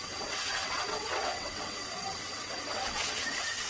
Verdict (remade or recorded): remade